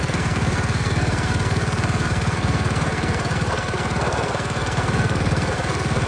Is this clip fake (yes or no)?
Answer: yes